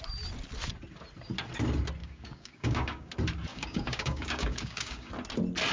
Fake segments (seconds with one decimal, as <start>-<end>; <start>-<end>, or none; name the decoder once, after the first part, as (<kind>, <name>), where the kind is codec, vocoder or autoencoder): 2.0-3.1 (codec, DAC); 3.5-5.1